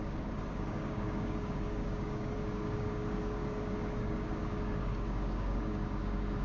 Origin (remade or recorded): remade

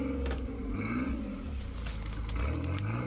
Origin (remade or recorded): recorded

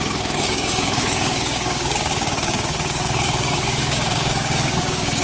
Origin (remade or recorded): remade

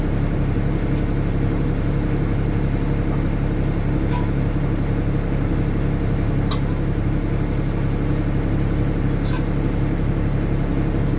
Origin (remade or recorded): recorded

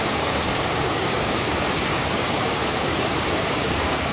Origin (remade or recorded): remade